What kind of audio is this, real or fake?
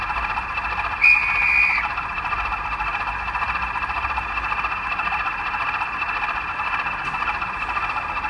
real